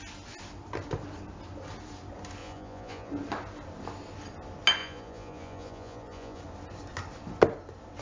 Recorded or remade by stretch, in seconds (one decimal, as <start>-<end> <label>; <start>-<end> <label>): 0.0-2.4 recorded; 2.4-3.1 remade; 3.1-4.8 recorded; 4.8-6.4 remade; 6.4-8.0 recorded